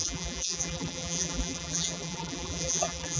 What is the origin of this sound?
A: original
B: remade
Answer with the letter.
B